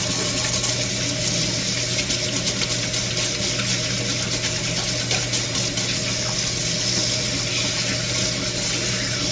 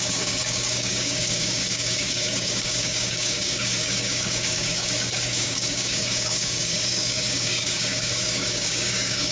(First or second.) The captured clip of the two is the first